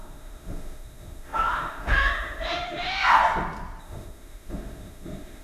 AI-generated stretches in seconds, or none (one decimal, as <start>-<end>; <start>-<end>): 0.0-3.2; 3.8-5.4